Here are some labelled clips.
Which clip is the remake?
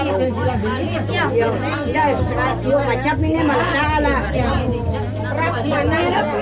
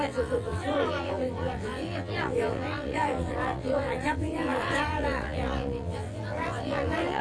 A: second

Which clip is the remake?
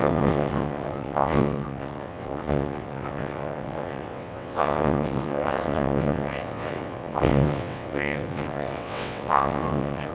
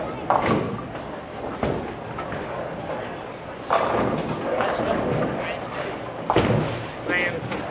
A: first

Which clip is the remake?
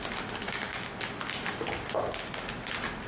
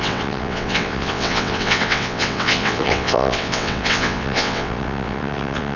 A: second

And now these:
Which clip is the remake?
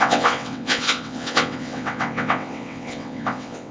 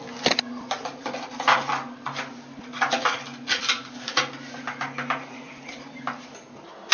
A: first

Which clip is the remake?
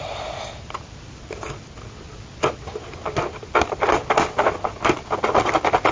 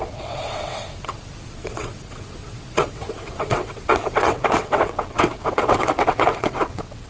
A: second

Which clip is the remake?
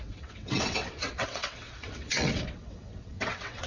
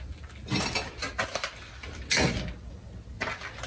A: first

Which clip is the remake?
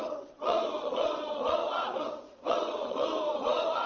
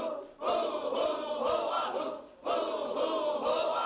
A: first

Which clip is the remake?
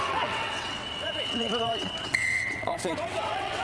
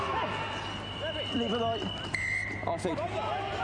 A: first